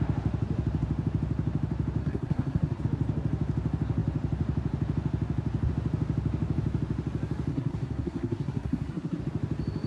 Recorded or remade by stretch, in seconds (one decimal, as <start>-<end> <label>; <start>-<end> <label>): 0.0-2.0 recorded; 2.0-2.8 remade; 2.8-7.5 recorded; 7.5-9.2 remade; 9.2-9.9 recorded